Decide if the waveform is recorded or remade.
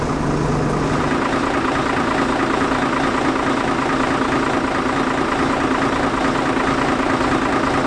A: recorded